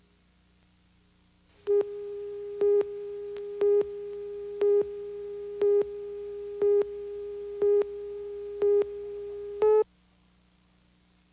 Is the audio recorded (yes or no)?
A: yes